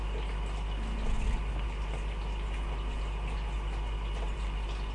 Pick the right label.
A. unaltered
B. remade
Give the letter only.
A